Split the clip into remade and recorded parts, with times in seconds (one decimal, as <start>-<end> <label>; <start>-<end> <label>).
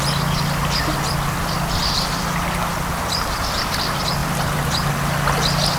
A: 0.0-4.2 recorded; 4.2-4.9 remade; 4.9-5.8 recorded